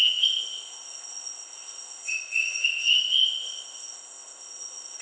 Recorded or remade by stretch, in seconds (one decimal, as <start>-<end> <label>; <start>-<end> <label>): 0.0-5.0 remade